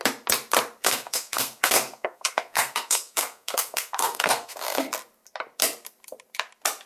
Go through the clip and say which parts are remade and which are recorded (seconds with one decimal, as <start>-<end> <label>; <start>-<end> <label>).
0.0-0.8 recorded; 0.8-4.9 remade; 4.9-6.9 recorded